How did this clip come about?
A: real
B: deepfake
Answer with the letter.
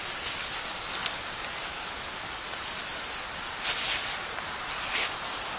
A